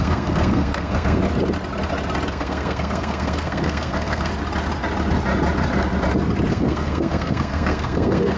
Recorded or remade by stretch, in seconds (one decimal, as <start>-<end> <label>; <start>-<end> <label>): 0.0-1.2 remade; 1.2-2.3 recorded; 2.3-4.3 remade; 4.3-6.5 recorded; 6.5-8.4 remade